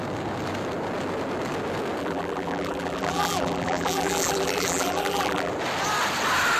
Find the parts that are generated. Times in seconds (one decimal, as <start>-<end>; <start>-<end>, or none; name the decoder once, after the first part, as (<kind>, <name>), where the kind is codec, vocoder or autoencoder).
2.0-5.5 (vocoder, BigVGAN v2)